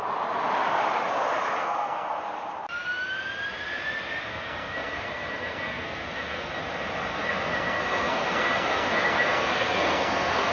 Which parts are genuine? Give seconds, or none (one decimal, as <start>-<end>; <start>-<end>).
0.0-1.6; 2.2-4.3; 6.5-7.1